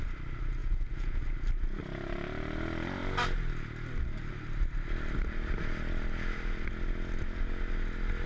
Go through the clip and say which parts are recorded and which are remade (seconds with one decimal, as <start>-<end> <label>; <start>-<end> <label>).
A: 0.0-0.6 recorded; 0.6-1.2 remade; 1.2-8.3 recorded